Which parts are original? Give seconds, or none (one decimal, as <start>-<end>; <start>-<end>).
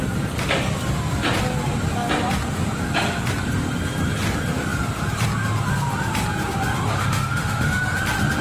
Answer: 0.0-7.0; 8.0-8.4